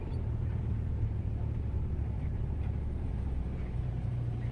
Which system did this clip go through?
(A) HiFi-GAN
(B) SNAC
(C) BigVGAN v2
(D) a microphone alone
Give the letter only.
C